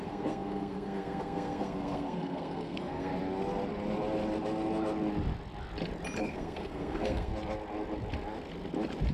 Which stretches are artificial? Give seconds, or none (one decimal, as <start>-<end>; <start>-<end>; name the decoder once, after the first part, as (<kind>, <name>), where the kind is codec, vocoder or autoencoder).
0.0-3.1 (codec, SNAC); 6.2-7.3